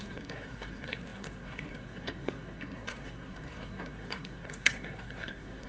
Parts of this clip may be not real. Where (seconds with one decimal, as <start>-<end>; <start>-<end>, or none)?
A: 0.0-5.7